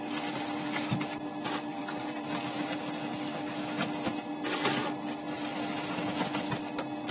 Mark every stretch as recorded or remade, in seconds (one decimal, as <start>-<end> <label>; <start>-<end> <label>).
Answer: 0.0-1.7 recorded; 1.7-2.6 remade; 2.6-7.1 recorded